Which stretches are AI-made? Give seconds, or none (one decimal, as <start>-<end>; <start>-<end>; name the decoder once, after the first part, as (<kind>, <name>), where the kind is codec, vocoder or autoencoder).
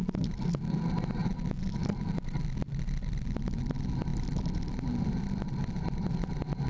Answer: 4.1-5.2 (vocoder, BigVGAN v2)